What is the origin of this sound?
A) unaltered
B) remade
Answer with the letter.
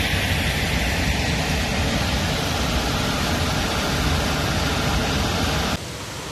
A